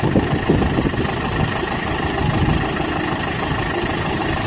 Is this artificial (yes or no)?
no